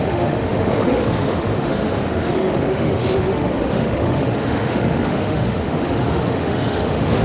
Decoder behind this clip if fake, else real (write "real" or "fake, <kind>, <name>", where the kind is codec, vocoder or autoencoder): fake, autoencoder, DAC-VAE